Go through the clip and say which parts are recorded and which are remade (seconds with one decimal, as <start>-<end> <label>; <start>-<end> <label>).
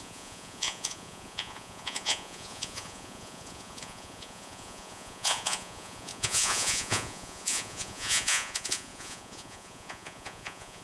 0.0-10.8 remade